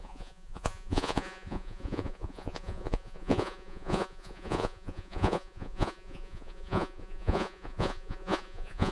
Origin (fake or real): fake